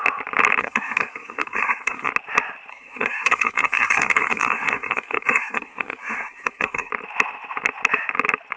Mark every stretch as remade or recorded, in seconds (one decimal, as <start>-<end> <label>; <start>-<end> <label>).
0.0-0.6 recorded; 0.6-2.1 remade; 2.1-2.7 recorded; 2.7-6.9 remade; 6.9-8.6 recorded